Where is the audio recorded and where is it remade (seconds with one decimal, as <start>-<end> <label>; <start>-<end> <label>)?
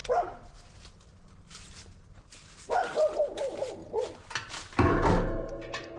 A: 0.0-6.0 recorded